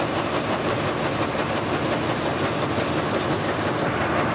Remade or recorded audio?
remade